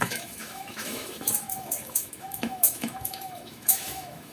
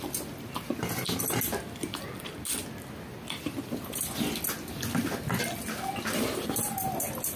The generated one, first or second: first